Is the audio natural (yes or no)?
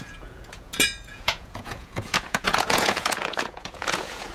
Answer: no